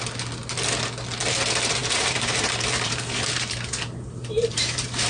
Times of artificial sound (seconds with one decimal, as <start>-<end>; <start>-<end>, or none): 1.8-5.1